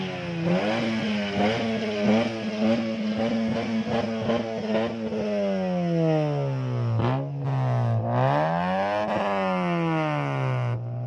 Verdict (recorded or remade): recorded